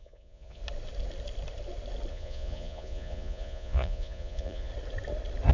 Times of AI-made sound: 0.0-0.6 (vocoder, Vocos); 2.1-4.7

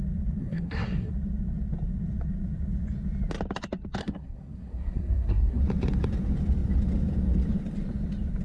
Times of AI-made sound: 0.4-1.1 (codec, SNAC); 4.0-5.6

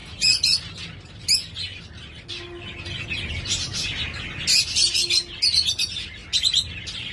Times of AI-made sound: none

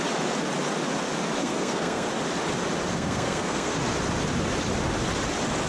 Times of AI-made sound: 1.4-2.1 (codec, SNAC); 2.9-3.8

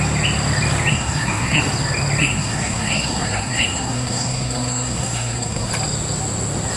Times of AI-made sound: 0.9-1.6 (codec, SNAC); 2.2-5.7

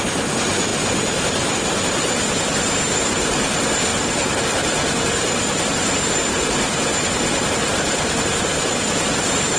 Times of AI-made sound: 3.9-4.6 (vocoder, BigVGAN v2); 7.6-8.4

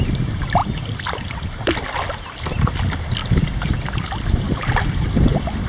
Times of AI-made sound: none